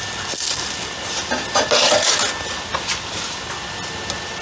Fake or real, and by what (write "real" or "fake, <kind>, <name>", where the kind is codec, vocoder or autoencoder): real